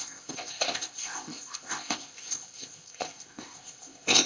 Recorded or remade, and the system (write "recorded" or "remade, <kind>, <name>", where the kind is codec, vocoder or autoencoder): remade, codec, ZipCodec